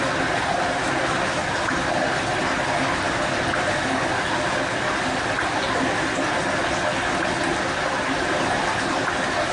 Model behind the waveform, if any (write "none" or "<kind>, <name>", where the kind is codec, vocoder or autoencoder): none